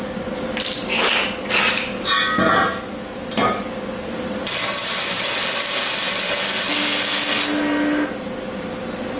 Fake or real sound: real